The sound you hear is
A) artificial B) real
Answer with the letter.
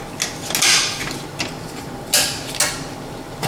B